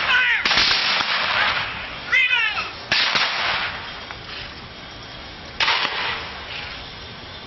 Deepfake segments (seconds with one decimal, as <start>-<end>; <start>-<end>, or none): 0.8-3.7; 5.2-6.9